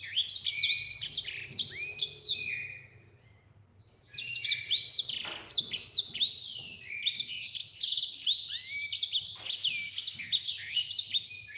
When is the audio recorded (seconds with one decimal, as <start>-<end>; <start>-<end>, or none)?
0.0-11.6